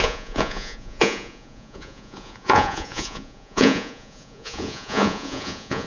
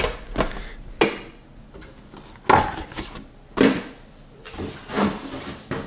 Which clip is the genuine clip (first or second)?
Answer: second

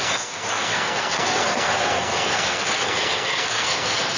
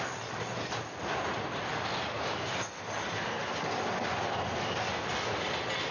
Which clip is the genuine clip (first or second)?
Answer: second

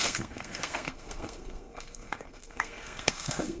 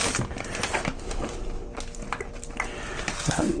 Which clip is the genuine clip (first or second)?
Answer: second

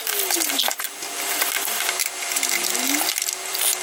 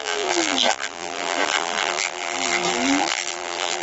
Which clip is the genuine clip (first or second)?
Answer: first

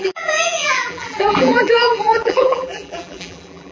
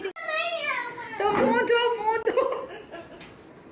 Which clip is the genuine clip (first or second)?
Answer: second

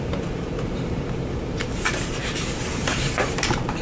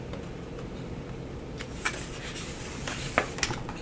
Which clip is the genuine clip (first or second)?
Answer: second